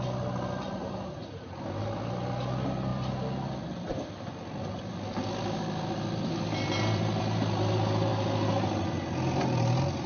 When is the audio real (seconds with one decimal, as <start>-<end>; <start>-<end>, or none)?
0.0-2.9; 7.2-10.1